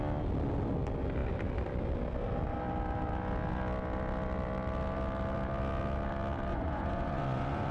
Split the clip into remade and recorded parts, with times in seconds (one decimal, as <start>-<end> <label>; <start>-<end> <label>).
0.0-6.5 recorded; 6.5-7.7 remade